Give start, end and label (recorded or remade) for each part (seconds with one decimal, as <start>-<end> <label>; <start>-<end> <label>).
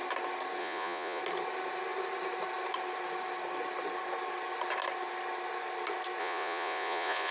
0.0-0.6 recorded; 0.6-1.2 remade; 1.2-6.2 recorded; 6.2-7.3 remade